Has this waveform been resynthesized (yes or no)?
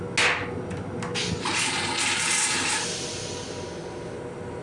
no